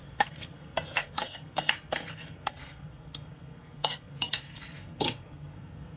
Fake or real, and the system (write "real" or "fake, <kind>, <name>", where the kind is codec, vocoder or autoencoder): fake, codec, SNAC